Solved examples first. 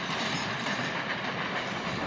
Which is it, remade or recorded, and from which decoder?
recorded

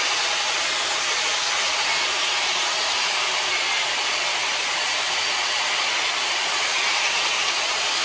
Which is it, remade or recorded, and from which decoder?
recorded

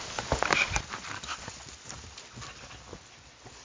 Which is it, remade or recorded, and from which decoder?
recorded